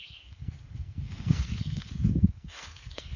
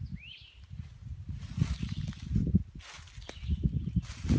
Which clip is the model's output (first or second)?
first